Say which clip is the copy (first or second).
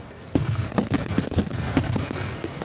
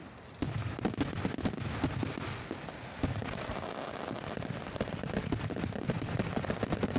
first